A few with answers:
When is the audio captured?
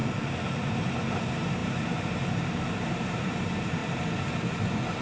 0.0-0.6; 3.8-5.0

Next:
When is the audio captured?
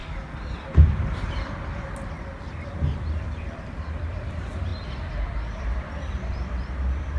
0.0-3.2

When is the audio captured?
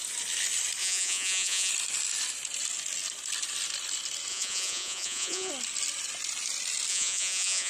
0.0-0.8; 1.7-4.3; 5.5-6.9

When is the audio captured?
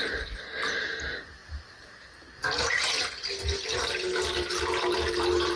0.0-5.6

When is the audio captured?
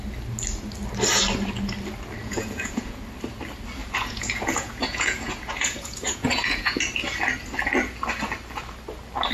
0.0-2.2; 3.0-3.8; 6.8-9.3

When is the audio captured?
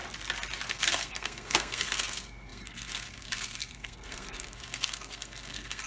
0.0-0.7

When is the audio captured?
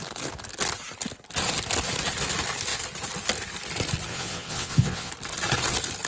0.0-4.1; 5.1-6.1